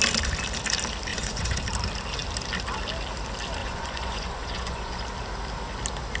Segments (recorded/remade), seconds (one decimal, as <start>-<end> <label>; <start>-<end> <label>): 0.0-1.1 recorded; 1.1-1.6 remade; 1.6-3.6 recorded; 3.6-5.0 remade; 5.0-6.2 recorded